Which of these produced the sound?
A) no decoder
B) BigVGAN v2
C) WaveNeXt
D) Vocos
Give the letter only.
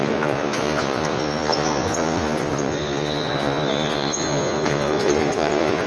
D